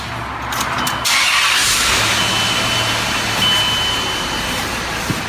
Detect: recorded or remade recorded